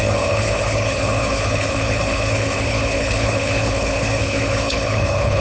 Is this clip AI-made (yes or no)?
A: yes